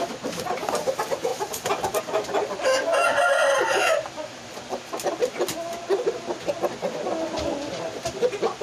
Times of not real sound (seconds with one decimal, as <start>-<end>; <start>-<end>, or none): none